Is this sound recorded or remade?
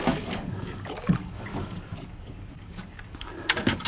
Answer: remade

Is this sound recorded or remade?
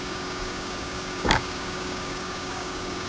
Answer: remade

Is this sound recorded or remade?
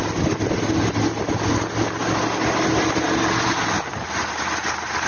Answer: recorded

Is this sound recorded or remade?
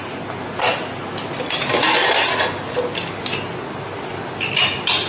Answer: recorded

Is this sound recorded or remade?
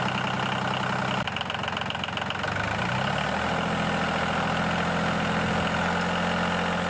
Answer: recorded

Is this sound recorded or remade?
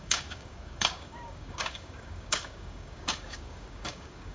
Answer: remade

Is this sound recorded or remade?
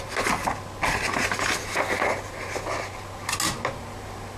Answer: recorded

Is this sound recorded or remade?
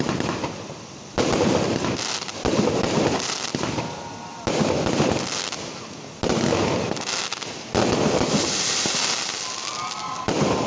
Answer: recorded